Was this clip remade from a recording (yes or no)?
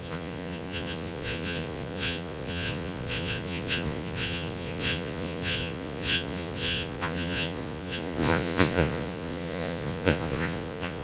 yes